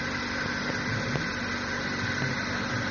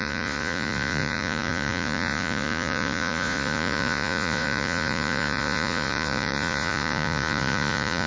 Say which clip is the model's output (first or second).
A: second